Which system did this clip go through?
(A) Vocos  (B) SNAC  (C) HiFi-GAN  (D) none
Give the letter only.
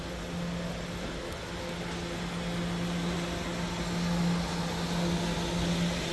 D